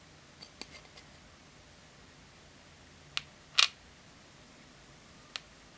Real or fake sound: real